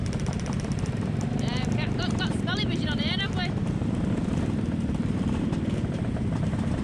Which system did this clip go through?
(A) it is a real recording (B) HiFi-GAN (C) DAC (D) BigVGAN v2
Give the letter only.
D